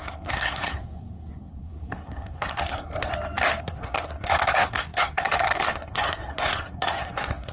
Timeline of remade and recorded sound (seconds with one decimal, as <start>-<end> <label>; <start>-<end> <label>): 0.0-3.1 remade; 3.1-3.6 recorded; 3.6-7.5 remade